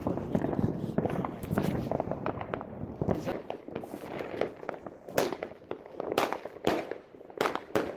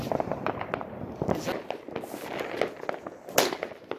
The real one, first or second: second